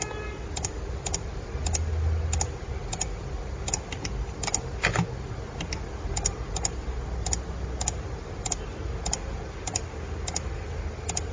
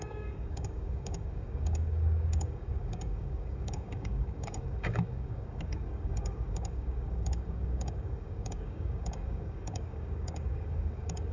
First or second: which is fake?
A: second